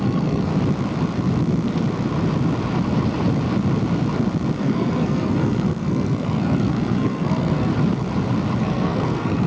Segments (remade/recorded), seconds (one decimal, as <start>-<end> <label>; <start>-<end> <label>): 0.0-0.5 remade; 0.5-4.6 recorded; 4.6-7.7 remade; 7.7-8.6 recorded; 8.6-9.5 remade

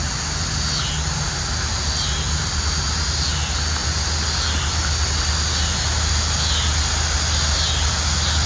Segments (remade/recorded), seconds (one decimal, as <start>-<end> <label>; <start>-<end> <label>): 0.0-8.5 recorded

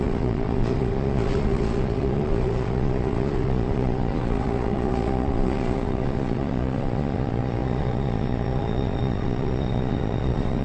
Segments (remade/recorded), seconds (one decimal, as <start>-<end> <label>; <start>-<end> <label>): 0.0-10.6 remade

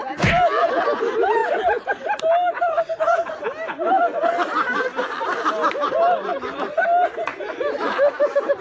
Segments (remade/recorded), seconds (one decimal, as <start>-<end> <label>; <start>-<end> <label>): 0.0-8.6 recorded

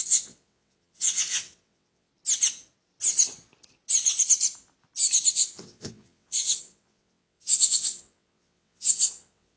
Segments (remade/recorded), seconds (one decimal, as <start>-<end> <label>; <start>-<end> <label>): 0.0-2.1 remade; 2.1-5.3 recorded; 5.3-9.6 remade

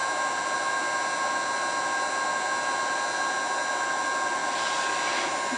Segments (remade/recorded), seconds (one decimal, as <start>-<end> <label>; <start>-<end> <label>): 0.0-5.6 recorded

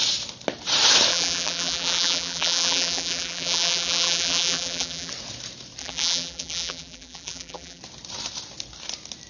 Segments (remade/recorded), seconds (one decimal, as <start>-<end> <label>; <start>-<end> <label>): 0.0-1.1 recorded; 1.1-5.1 remade; 5.1-5.8 recorded; 5.8-7.8 remade; 7.8-9.3 recorded